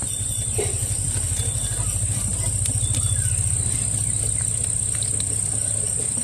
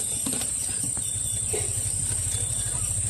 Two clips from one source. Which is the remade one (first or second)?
second